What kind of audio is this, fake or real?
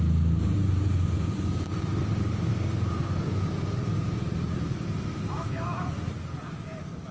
real